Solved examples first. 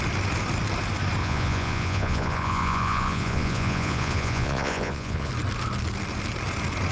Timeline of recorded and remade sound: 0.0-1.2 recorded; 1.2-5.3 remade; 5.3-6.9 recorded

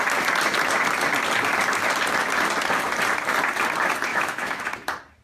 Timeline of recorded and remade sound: 0.0-4.1 recorded; 4.1-4.6 remade; 4.6-5.2 recorded

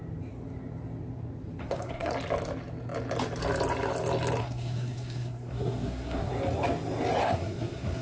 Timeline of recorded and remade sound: 0.0-1.6 recorded; 1.6-2.1 remade; 2.1-4.4 recorded; 4.4-6.3 remade; 6.3-7.2 recorded; 7.2-8.0 remade

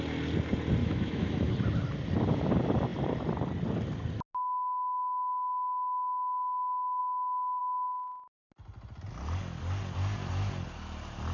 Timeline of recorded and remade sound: 0.0-0.8 recorded; 0.8-1.5 remade; 1.5-11.3 recorded

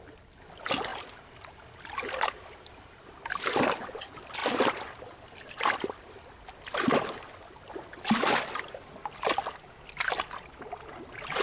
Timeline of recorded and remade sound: 0.0-4.4 recorded; 4.4-5.8 remade; 5.8-11.4 recorded

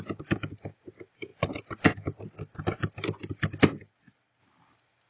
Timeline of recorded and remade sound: 0.0-5.1 recorded